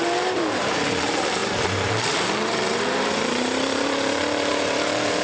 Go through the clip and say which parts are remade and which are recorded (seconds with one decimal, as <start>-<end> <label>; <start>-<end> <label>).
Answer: 0.0-5.2 remade